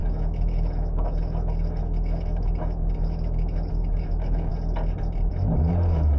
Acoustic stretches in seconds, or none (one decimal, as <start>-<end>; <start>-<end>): 4.5-5.3

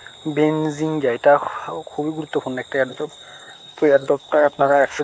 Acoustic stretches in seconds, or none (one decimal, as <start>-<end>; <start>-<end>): 0.0-2.9

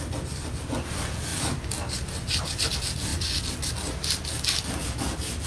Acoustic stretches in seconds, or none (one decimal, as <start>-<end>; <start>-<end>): 0.0-5.5

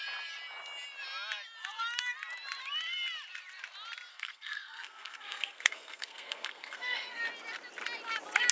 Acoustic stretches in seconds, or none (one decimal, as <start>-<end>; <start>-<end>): 0.0-4.1; 7.2-8.5